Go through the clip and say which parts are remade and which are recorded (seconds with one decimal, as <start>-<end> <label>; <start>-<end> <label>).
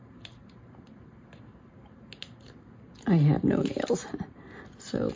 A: 0.0-0.4 remade; 0.4-3.5 recorded; 3.5-5.2 remade